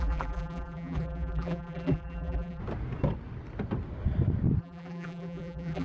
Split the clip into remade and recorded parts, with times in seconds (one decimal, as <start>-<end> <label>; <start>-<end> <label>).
0.0-2.6 remade; 2.6-4.6 recorded; 4.6-5.8 remade